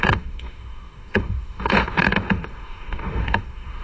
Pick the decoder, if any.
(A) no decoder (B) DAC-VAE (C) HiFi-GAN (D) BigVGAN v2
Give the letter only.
B